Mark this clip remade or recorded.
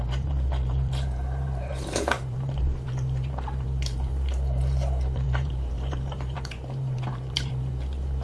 remade